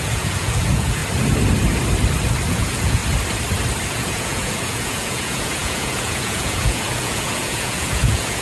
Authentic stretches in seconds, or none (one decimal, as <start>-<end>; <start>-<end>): 1.0-2.5; 3.0-3.9